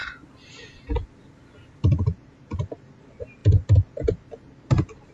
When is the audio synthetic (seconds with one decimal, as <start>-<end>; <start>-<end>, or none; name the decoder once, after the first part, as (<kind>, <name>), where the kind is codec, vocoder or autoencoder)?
none